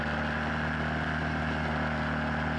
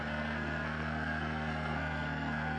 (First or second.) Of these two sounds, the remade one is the second